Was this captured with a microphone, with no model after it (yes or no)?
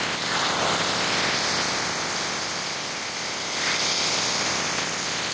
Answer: yes